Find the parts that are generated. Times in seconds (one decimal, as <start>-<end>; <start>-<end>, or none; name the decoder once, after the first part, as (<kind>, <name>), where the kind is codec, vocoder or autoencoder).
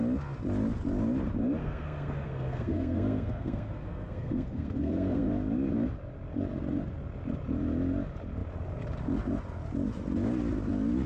1.6-5.3 (codec, SNAC)